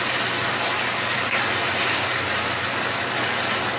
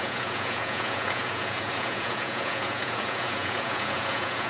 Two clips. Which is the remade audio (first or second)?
second